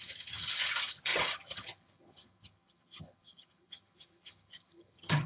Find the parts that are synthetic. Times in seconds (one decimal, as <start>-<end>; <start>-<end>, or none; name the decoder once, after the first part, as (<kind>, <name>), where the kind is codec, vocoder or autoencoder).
0.0-5.3 (vocoder, HiFi-GAN)